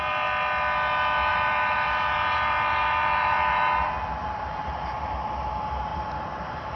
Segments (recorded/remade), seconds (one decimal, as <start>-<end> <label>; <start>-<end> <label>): 0.0-1.3 recorded; 1.3-4.4 remade; 4.4-5.9 recorded; 5.9-6.8 remade